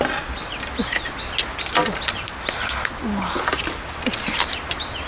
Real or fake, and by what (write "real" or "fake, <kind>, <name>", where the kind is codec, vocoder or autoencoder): real